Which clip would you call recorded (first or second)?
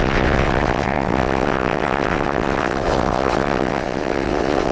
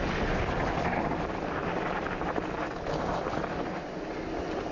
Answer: second